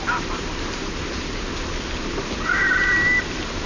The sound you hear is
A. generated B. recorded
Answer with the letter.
B